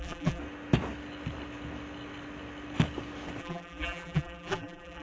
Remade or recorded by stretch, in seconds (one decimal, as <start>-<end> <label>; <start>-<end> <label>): 0.0-0.4 remade; 0.4-3.4 recorded; 3.4-5.0 remade